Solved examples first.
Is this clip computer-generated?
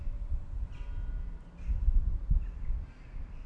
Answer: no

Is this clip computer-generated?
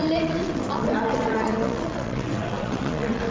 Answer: yes